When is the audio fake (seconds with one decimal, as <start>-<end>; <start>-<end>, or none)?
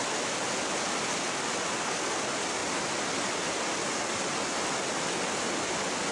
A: none